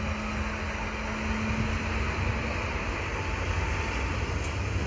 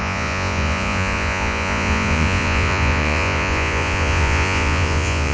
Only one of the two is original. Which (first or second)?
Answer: first